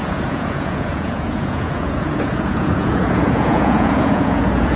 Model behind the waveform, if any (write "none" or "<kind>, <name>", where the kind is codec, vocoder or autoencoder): vocoder, Vocos